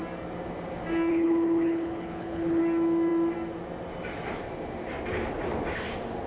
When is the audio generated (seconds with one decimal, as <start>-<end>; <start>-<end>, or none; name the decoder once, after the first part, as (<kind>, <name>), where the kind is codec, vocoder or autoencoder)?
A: 1.1-2.6 (codec, HILCodec)